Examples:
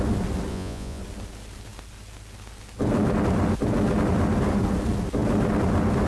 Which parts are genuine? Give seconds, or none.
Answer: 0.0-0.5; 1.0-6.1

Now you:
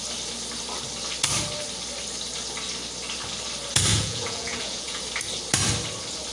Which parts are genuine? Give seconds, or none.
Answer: 0.0-3.9; 5.0-6.3

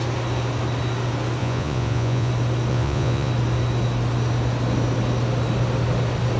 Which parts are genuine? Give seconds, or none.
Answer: 0.0-1.4; 2.3-2.7; 3.3-6.4

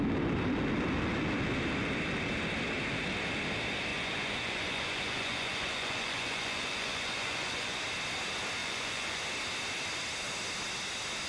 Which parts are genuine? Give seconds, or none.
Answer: 0.0-3.9; 7.8-8.6; 9.2-11.3

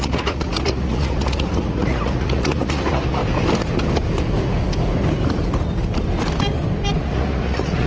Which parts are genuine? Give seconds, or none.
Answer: 3.2-7.0

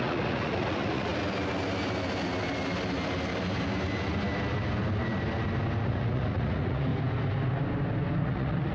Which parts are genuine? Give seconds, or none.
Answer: 1.1-5.8; 6.9-8.2

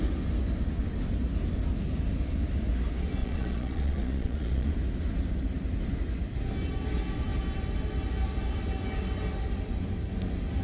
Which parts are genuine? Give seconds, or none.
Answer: 0.0-3.2; 4.7-10.6